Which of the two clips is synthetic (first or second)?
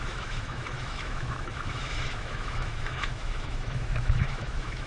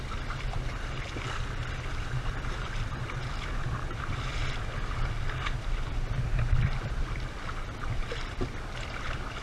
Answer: first